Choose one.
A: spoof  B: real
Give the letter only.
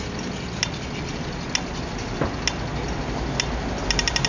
B